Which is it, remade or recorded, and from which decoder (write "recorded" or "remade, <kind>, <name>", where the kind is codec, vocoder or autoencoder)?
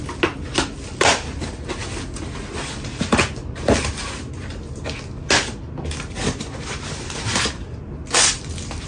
recorded